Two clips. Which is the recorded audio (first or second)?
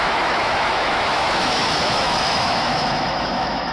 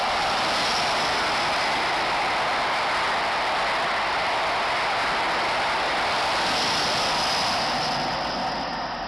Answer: second